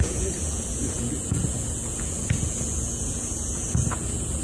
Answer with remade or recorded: remade